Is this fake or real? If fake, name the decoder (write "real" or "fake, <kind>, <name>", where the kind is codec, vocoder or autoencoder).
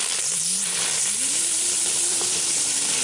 fake, vocoder, BigVGAN v2